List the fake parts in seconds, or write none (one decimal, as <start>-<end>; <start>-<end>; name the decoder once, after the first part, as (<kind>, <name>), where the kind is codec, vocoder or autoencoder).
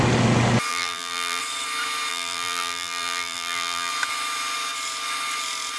0.7-1.4 (vocoder, BigVGAN v2); 2.1-3.9